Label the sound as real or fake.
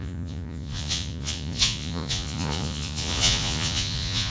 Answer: fake